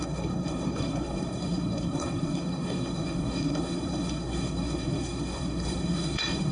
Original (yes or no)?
no